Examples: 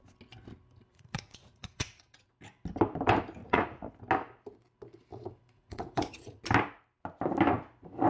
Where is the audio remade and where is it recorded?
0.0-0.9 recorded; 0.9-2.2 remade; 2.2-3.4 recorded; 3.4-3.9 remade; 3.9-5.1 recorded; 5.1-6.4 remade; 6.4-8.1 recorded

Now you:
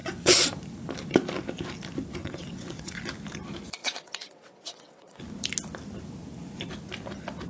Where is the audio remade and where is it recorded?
0.0-0.5 remade; 0.5-2.2 recorded; 2.2-3.0 remade; 3.0-3.8 recorded; 3.8-5.2 remade; 5.2-7.5 recorded

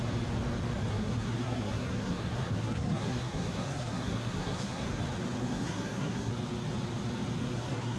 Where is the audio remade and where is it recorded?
0.0-0.9 recorded; 0.9-5.0 remade; 5.0-5.4 recorded; 5.4-6.3 remade; 6.3-7.4 recorded; 7.4-8.0 remade